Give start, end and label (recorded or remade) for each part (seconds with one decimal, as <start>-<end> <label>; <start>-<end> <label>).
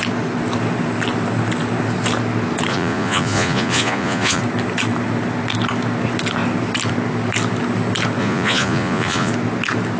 0.0-2.7 recorded; 2.7-4.4 remade; 4.4-8.2 recorded; 8.2-9.3 remade; 9.3-10.0 recorded